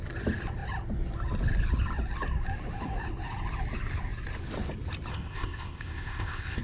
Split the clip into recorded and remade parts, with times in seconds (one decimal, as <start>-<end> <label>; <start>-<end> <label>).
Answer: 0.0-5.1 recorded; 5.1-6.6 remade